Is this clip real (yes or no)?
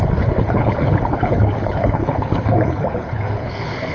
no